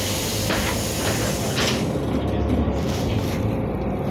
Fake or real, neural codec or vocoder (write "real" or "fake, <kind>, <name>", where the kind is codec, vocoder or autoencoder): real